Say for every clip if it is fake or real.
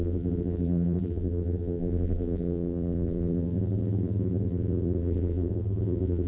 fake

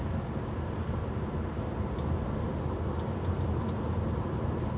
real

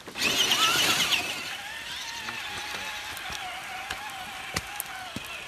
real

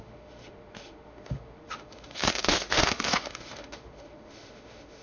fake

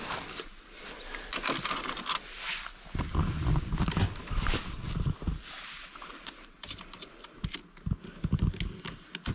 real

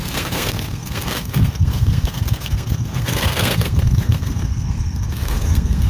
fake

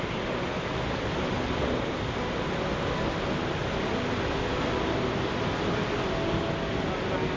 real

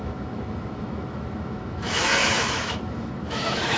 fake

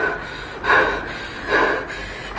real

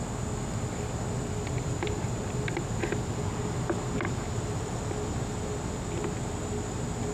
real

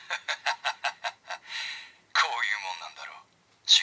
real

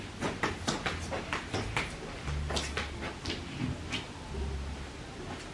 real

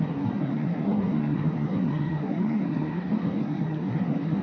fake